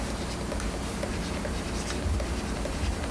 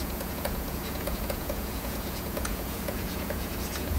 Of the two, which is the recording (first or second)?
first